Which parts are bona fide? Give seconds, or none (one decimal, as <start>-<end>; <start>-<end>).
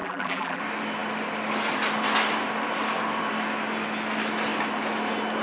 0.6-5.4